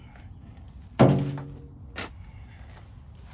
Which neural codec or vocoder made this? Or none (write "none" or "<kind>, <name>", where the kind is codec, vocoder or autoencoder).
none